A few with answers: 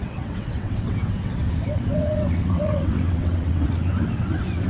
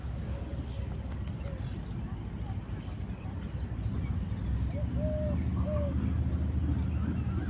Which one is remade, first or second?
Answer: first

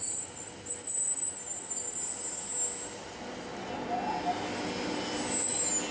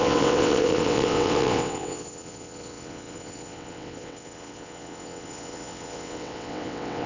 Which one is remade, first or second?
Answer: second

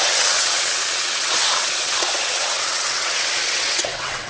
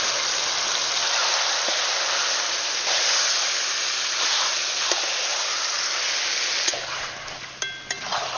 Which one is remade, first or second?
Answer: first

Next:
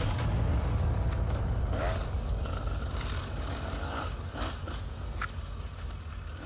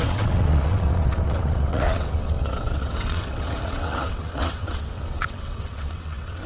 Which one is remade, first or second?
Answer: second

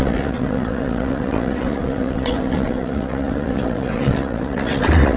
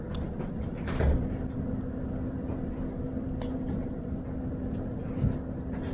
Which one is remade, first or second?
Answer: first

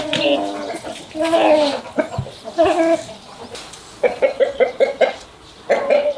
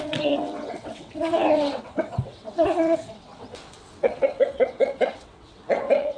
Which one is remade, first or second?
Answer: second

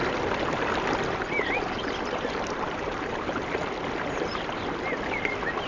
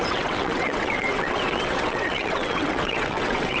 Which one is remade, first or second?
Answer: second